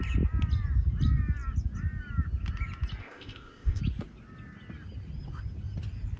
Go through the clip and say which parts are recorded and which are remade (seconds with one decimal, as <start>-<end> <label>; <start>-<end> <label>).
0.0-3.0 recorded; 3.0-3.8 remade; 3.8-6.2 recorded